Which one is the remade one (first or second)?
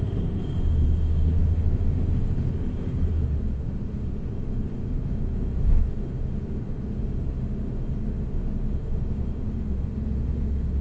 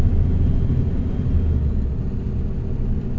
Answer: first